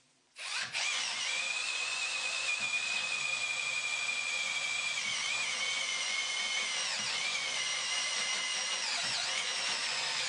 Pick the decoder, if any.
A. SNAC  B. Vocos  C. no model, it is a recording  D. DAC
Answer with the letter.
B